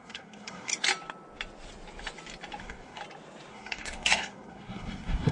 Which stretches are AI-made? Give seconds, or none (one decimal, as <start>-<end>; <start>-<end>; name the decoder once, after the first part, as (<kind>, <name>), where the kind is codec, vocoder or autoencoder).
0.0-0.7 (codec, SNAC); 2.6-3.0; 3.5-5.3